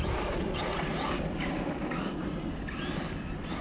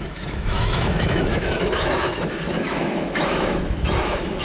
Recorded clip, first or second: first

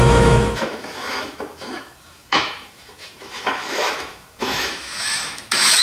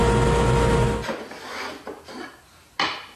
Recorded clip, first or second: second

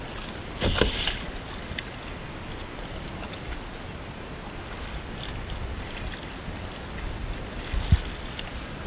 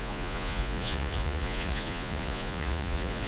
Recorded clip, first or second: first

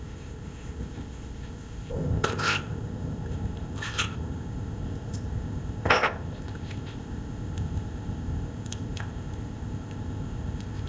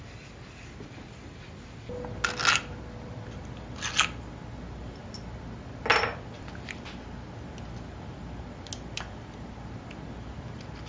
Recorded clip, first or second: second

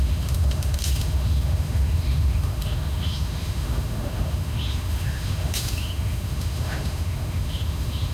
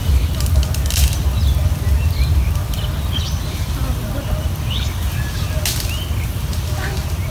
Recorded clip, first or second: second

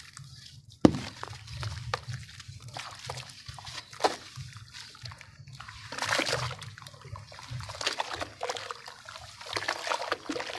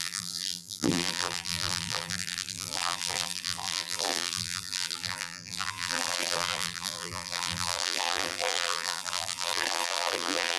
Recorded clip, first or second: first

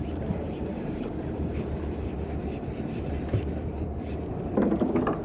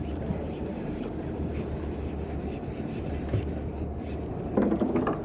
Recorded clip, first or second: second